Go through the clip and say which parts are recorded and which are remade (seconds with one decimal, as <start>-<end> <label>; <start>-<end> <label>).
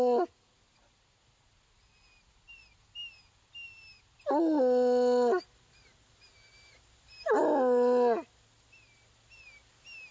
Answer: 0.0-10.1 recorded